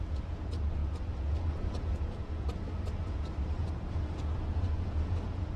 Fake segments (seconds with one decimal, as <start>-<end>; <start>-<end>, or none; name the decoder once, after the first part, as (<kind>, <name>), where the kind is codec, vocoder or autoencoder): 0.0-5.6 (vocoder, Vocos)